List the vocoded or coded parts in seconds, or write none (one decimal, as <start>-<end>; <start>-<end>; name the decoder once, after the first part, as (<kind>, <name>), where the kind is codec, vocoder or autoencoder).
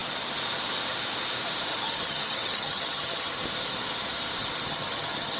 1.7-3.3 (vocoder, HiFi-GAN); 4.7-5.4